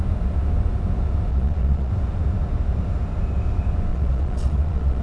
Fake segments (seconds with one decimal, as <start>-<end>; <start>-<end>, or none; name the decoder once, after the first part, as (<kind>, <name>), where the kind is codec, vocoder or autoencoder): 1.3-1.9 (vocoder, Vocos); 3.9-5.0